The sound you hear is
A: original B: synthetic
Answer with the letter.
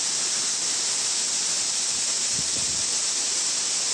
A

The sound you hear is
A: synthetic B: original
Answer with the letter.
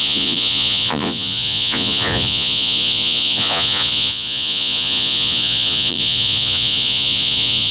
A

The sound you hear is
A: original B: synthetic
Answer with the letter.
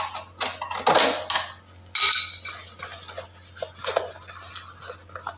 A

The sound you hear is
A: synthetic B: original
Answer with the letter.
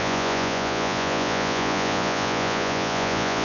A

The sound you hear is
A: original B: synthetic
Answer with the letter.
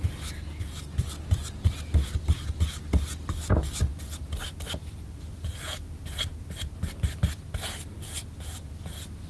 A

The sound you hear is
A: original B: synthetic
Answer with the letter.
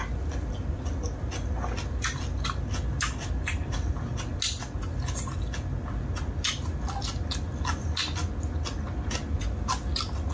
A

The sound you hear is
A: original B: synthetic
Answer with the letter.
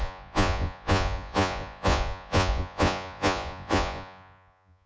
B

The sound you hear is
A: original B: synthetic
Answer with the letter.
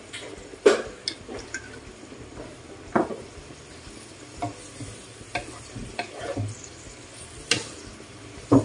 A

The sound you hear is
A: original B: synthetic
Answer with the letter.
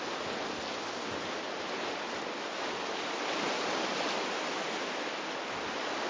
A